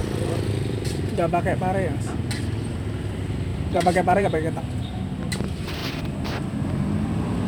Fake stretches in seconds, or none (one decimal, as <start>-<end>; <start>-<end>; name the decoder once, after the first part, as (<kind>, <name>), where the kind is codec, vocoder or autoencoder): 3.5-4.6 (vocoder, BigVGAN v2)

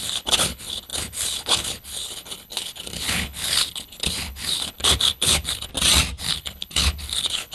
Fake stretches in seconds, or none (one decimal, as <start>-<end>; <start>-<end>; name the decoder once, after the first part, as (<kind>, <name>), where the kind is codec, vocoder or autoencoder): 0.0-5.7 (codec, HILCodec); 6.2-7.5